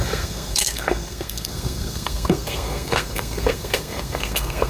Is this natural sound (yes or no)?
no